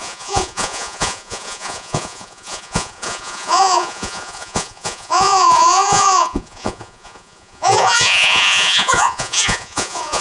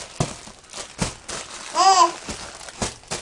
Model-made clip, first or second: first